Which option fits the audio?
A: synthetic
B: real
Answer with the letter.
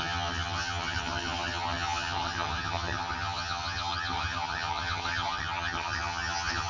A